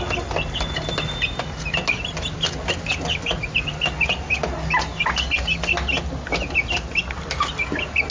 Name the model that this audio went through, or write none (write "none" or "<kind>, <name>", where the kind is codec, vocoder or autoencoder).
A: none